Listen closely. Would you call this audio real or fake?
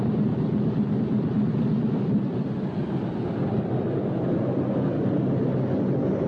real